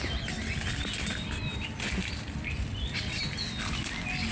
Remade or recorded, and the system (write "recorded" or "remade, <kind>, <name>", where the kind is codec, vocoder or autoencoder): recorded